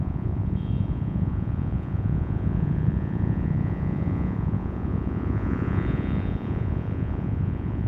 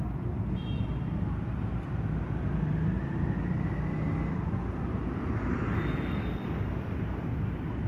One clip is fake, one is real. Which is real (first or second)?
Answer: second